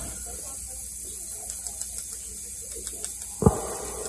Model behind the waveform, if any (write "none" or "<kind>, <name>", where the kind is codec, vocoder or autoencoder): none